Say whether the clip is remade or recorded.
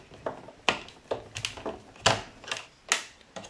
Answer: recorded